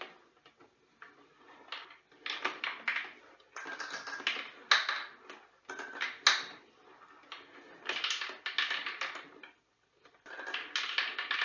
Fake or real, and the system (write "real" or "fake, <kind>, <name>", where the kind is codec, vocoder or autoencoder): real